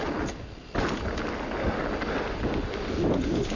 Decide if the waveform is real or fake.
real